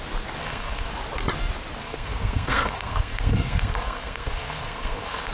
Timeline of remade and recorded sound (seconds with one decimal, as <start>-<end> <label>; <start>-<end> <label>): 0.0-0.4 recorded; 0.4-0.9 remade; 0.9-1.8 recorded; 1.8-5.3 remade